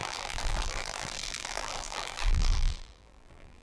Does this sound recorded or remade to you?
remade